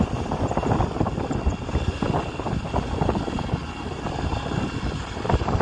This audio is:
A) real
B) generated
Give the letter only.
A